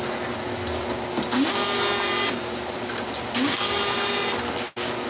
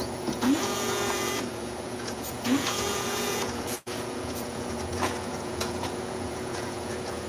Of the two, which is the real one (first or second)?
first